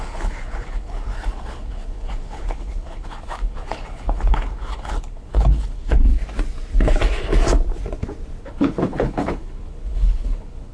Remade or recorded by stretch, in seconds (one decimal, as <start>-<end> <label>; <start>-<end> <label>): 0.0-6.2 remade; 6.2-8.4 recorded; 8.4-10.7 remade